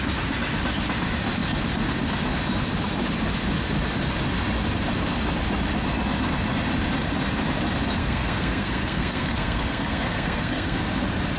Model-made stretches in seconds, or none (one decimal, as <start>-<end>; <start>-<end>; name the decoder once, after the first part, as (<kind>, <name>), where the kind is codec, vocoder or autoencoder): 8.0-10.8 (codec, SNAC)